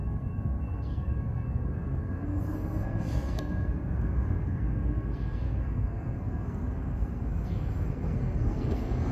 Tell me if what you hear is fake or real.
fake